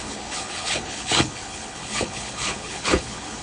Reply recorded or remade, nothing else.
remade